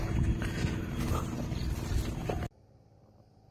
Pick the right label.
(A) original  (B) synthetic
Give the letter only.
A